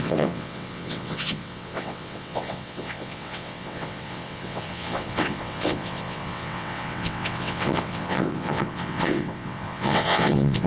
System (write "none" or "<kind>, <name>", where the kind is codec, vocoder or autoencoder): vocoder, WaveNeXt